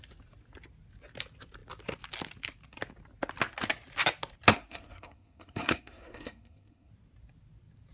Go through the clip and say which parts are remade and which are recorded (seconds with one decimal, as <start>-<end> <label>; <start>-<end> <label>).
0.0-4.5 recorded; 4.5-6.9 remade; 6.9-7.9 recorded